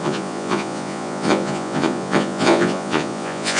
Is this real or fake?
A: fake